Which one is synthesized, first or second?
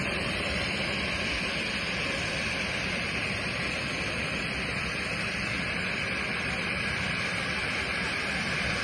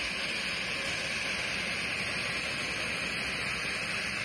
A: first